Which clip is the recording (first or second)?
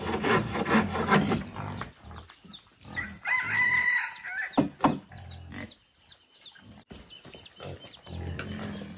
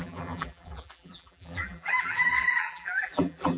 first